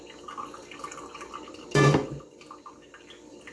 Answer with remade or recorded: recorded